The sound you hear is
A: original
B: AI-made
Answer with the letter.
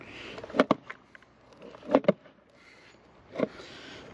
A